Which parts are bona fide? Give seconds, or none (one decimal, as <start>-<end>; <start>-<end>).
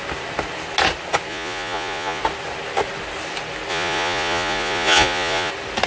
0.0-1.3; 2.2-3.7; 5.5-5.9